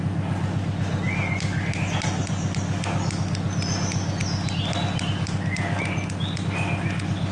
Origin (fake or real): real